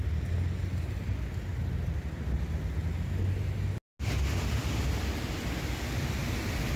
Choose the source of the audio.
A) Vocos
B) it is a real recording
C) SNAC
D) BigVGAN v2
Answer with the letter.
B